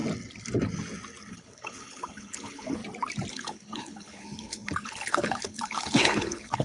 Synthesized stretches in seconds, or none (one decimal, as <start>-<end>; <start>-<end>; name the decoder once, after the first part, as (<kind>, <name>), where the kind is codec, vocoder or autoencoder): 1.3-2.8 (codec, HILCodec); 3.3-6.6